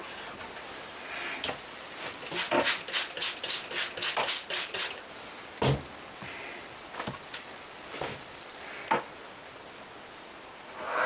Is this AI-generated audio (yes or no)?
no